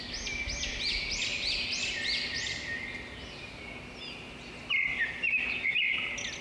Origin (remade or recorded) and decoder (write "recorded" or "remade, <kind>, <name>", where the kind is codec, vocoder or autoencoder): recorded